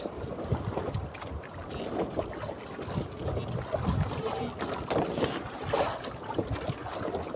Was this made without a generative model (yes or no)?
yes